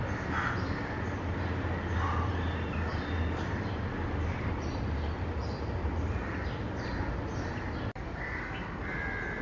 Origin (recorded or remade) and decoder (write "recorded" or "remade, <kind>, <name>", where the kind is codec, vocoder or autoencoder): recorded